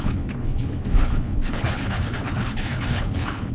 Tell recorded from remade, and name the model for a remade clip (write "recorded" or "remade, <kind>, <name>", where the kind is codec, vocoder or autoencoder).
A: remade, codec, HILCodec